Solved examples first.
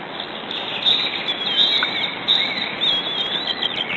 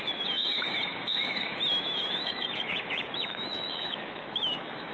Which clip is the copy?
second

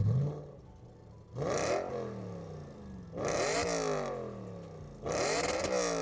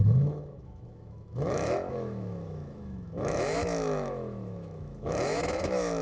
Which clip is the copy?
second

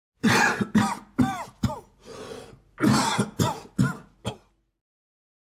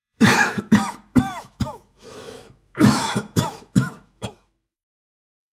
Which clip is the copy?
second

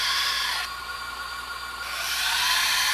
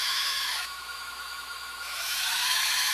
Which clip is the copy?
second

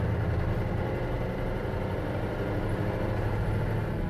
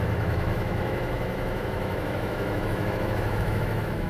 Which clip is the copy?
second